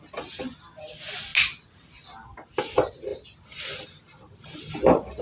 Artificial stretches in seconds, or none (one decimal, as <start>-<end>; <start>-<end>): none